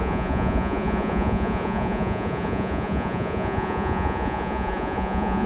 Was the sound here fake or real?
fake